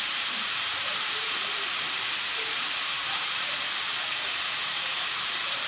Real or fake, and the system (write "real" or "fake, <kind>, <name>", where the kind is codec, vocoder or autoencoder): fake, vocoder, BigVGAN v2